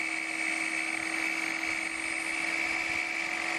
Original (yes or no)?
yes